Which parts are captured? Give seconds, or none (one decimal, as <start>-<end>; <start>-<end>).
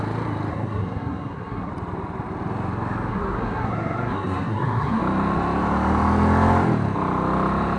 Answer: 0.0-0.5; 1.7-3.1; 5.0-7.8